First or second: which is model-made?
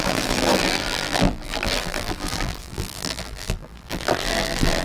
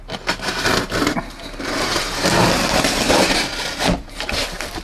first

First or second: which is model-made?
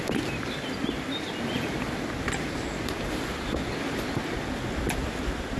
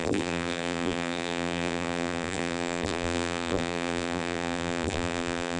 second